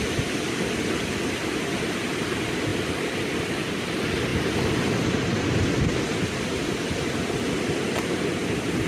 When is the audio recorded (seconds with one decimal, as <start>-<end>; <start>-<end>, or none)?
0.0-2.7; 3.4-8.9